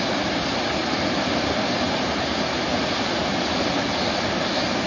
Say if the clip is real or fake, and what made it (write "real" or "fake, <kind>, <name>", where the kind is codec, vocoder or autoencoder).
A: real